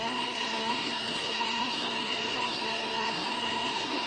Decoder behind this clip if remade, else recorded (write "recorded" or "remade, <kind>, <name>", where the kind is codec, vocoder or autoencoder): remade, codec, SNAC